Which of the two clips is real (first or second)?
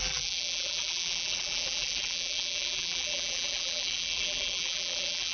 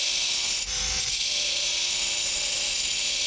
second